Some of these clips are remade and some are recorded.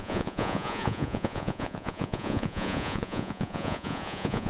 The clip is remade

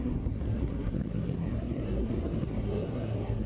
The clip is remade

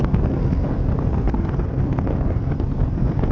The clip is remade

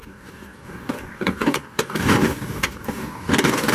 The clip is remade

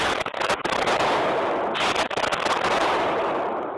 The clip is recorded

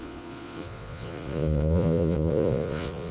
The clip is remade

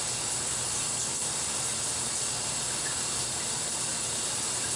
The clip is recorded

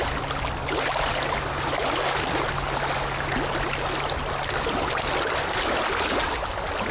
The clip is recorded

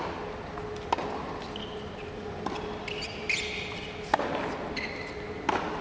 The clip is recorded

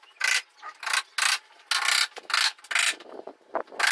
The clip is recorded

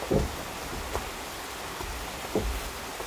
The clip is recorded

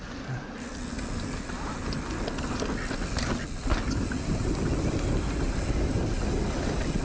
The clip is recorded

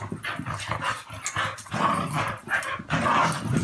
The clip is recorded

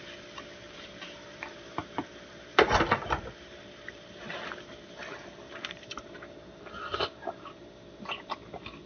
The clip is remade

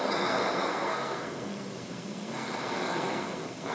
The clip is remade